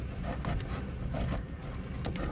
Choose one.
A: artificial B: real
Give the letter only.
B